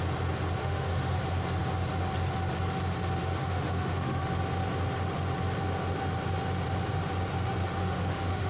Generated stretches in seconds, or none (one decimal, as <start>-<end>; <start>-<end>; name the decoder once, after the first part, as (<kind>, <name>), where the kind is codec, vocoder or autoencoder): 0.6-1.2 (autoencoder, DAC-VAE); 3.4-4.2; 7.8-8.5